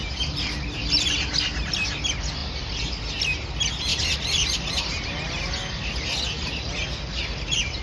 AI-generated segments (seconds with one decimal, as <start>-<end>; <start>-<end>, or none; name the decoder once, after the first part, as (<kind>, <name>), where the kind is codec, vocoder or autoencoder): 2.4-2.9 (vocoder, BigVGAN v2); 3.9-5.1